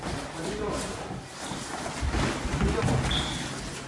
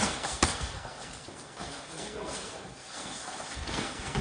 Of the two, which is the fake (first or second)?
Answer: second